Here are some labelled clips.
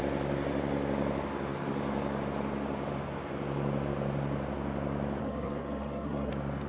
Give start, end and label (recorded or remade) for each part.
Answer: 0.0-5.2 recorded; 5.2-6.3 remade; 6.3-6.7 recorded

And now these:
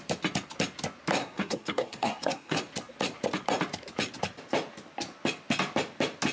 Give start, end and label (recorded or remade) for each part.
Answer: 0.0-1.2 recorded; 1.2-2.6 remade; 2.6-6.3 recorded

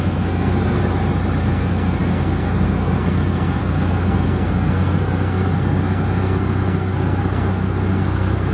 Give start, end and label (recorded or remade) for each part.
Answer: 0.0-0.8 remade; 0.8-1.4 recorded; 1.4-8.5 remade

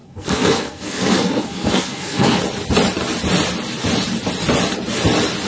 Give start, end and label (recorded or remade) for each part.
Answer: 0.0-2.4 remade; 2.4-5.5 recorded

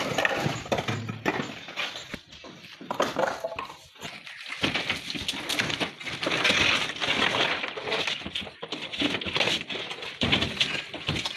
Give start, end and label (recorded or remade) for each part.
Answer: 0.0-11.4 recorded

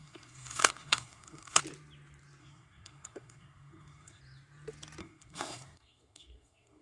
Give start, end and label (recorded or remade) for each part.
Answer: 0.0-1.6 remade; 1.6-2.4 recorded; 2.4-4.2 remade; 4.2-5.0 recorded; 5.0-6.8 remade

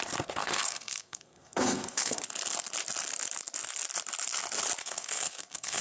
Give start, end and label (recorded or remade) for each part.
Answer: 0.0-0.4 recorded; 0.4-2.2 remade; 2.2-4.8 recorded; 4.8-5.8 remade